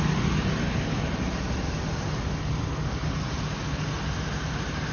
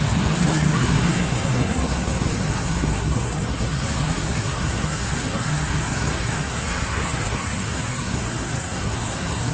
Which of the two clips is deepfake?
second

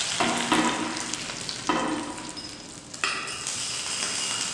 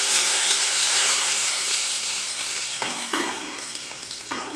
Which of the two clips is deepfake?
second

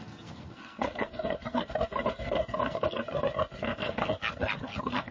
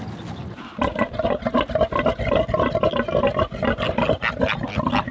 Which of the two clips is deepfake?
first